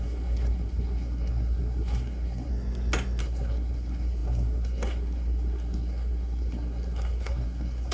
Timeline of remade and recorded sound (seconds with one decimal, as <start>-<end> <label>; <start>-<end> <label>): 0.0-2.5 remade; 2.5-3.2 recorded; 3.2-7.9 remade